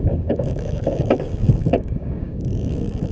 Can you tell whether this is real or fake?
fake